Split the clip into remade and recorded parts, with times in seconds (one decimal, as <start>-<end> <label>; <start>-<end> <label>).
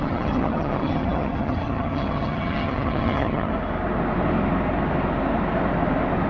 0.0-3.5 remade; 3.5-6.3 recorded